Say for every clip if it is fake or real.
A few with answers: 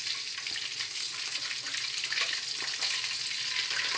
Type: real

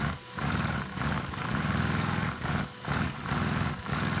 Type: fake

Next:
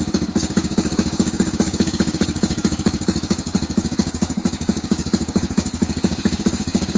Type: fake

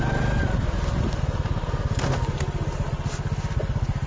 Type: real